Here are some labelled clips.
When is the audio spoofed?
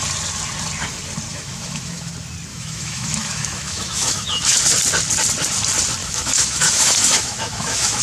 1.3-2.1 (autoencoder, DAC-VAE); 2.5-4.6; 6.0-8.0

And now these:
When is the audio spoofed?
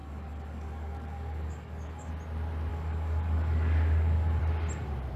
0.0-2.1 (codec, DAC); 2.7-4.4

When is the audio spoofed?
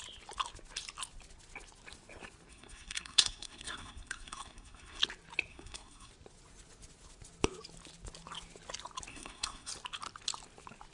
2.5-5.0 (codec, SNAC); 5.5-6.1; 9.1-9.7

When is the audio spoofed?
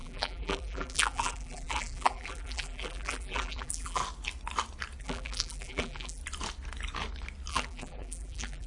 0.0-4.0 (vocoder, BigVGAN v2); 5.0-6.2; 7.5-8.7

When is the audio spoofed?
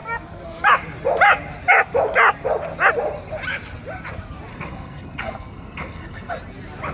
4.5-6.3 (codec, SNAC)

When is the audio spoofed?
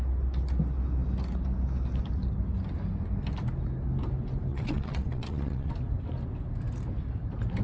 4.5-5.7 (vocoder, WaveNeXt)